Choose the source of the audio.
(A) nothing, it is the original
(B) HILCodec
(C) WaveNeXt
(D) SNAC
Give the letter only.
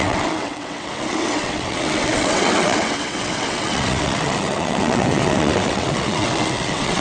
C